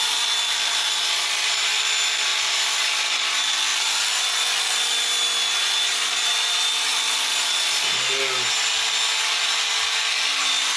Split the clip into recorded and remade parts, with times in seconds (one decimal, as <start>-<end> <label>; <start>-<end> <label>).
0.0-10.8 recorded